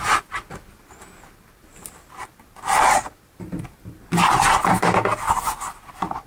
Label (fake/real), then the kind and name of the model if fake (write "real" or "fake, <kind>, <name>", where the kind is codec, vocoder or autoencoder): real